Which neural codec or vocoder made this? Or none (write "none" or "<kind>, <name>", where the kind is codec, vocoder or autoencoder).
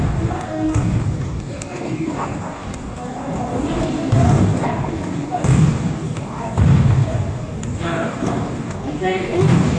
codec, DAC